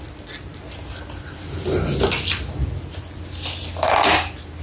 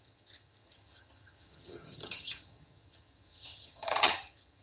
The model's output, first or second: second